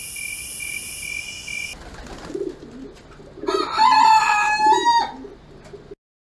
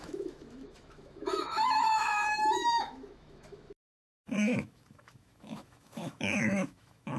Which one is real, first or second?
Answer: first